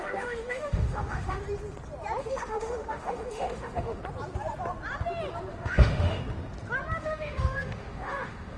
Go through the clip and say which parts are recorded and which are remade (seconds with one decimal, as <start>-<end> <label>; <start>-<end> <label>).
0.0-1.4 remade; 1.4-2.2 recorded; 2.2-4.0 remade; 4.0-5.5 recorded; 5.5-6.2 remade; 6.2-7.0 recorded; 7.0-8.6 remade